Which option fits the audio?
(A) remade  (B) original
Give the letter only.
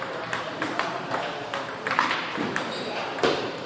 A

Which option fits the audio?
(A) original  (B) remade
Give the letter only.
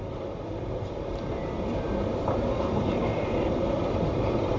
B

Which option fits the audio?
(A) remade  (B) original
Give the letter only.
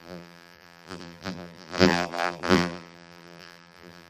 A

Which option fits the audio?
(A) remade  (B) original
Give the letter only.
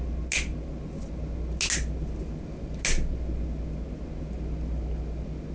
B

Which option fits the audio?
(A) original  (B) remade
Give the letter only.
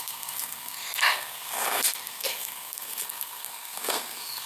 B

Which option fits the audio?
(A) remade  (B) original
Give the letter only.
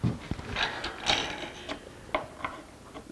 B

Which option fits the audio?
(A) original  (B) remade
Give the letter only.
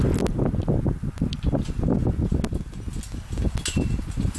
A